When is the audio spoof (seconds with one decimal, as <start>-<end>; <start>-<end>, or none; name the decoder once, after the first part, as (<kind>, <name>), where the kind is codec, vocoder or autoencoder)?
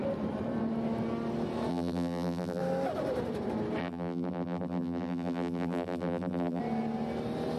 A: 1.7-2.6 (vocoder, BigVGAN v2); 3.8-6.6